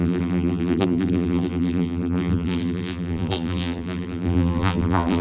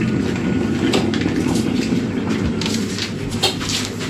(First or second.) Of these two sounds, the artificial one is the first